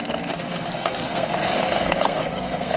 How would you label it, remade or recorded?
remade